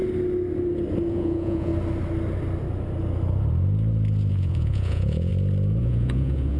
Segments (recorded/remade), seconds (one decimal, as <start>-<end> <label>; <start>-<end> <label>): 0.0-1.1 recorded; 1.1-1.7 remade; 1.7-4.3 recorded; 4.3-5.3 remade; 5.3-5.8 recorded; 5.8-6.6 remade

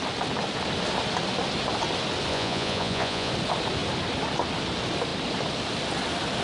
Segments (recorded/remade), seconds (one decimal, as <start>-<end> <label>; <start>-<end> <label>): 0.0-2.3 recorded; 2.3-3.3 remade; 3.3-6.4 recorded